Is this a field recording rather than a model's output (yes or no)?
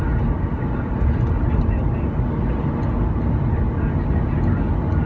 yes